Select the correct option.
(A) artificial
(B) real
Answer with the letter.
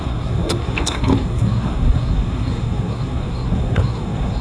A